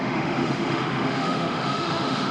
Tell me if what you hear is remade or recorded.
remade